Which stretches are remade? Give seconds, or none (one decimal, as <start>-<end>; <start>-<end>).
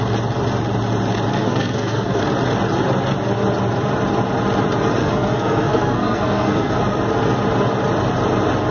1.3-2.2; 5.0-6.8